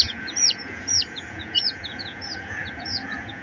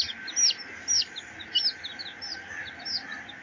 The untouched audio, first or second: second